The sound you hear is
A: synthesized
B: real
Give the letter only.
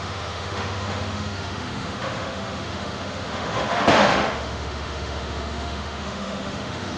A